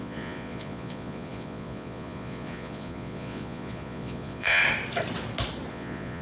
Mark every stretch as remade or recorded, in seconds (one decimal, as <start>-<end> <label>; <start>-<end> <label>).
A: 0.0-4.6 remade; 4.6-5.7 recorded; 5.7-6.2 remade